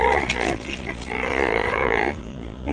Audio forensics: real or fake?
fake